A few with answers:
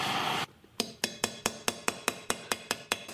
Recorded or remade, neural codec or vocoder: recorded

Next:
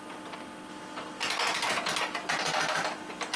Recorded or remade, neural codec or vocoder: recorded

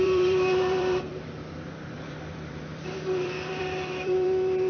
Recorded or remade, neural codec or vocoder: remade, vocoder, BigVGAN v2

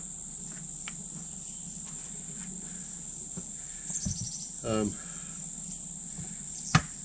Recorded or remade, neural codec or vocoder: recorded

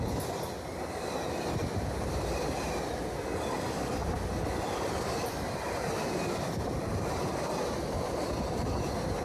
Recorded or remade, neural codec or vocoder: remade, vocoder, BigVGAN v2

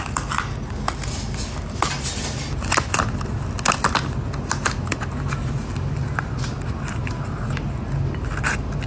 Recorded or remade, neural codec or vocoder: recorded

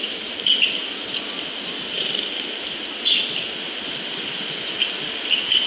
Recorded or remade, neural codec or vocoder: recorded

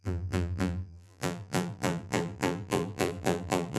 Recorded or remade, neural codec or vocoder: remade, vocoder, BigVGAN v2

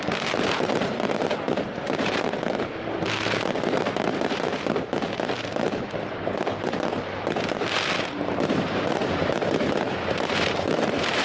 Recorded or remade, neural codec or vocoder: remade, vocoder, BigVGAN v2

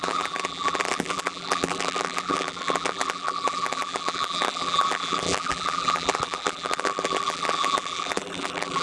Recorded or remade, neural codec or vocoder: remade, vocoder, BigVGAN v2